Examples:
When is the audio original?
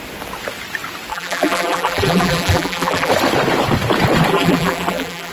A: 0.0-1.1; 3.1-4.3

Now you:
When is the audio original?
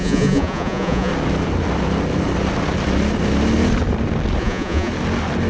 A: 1.1-4.4; 4.9-5.5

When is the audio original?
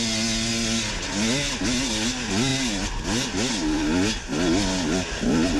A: 0.0-5.6